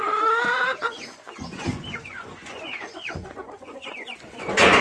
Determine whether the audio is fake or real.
fake